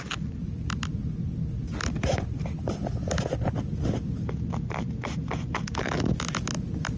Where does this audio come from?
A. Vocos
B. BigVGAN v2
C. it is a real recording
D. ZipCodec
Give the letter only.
C